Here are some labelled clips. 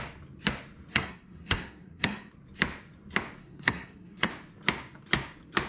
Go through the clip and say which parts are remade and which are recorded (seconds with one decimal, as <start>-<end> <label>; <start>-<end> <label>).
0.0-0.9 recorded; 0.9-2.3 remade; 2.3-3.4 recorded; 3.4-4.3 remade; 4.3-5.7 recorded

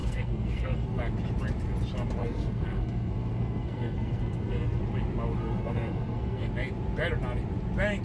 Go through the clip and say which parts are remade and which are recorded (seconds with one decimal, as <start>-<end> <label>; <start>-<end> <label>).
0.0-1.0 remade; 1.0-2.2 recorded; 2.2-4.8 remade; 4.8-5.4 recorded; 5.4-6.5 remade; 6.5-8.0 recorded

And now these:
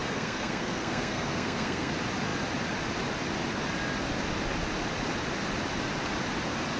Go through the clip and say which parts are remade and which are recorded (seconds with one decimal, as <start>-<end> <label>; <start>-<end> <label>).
0.0-1.9 remade; 1.9-6.8 recorded

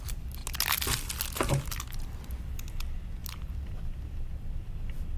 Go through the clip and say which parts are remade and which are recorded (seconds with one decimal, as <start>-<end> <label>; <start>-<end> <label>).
0.0-5.2 recorded

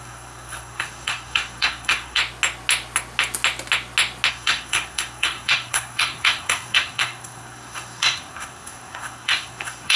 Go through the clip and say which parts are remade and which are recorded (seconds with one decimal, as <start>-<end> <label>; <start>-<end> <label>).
0.0-2.2 remade; 2.2-4.3 recorded; 4.3-10.0 remade

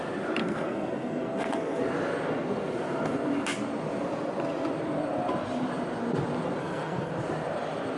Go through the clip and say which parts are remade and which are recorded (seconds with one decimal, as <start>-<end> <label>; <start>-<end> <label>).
0.0-0.4 recorded; 0.4-1.8 remade; 1.8-6.6 recorded; 6.6-7.1 remade; 7.1-8.0 recorded

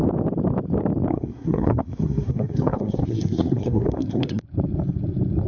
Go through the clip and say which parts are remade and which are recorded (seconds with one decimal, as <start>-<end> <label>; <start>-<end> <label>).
0.0-1.1 recorded; 1.1-4.4 remade; 4.4-5.5 recorded